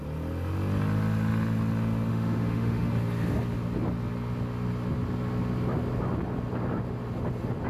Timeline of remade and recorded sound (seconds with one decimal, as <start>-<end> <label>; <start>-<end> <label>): 0.0-2.1 recorded; 2.1-2.9 remade; 2.9-7.7 recorded